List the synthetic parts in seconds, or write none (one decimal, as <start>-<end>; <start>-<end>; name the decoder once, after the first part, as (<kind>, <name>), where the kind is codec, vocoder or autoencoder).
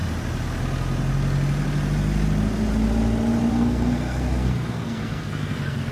3.5-5.9 (codec, SNAC)